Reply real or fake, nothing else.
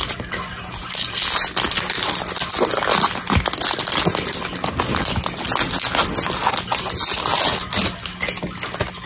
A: real